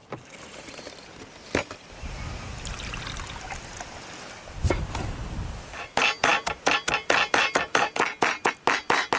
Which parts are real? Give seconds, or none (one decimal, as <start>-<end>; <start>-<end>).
0.0-9.2